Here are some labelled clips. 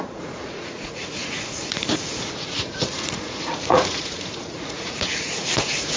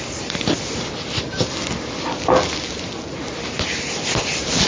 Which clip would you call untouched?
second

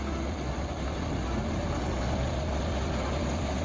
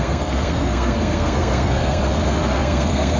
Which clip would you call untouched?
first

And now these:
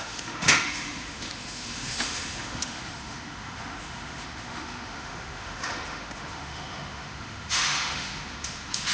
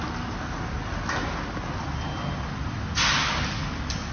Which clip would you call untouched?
second